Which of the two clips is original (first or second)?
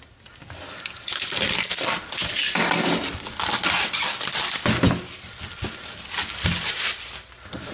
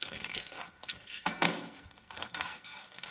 first